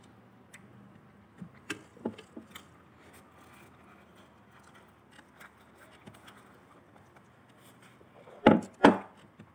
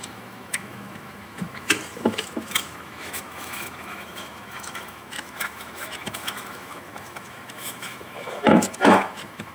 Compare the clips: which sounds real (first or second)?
first